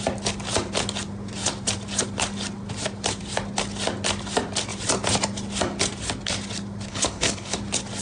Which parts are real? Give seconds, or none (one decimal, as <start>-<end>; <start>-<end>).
0.0-6.9; 7.6-8.0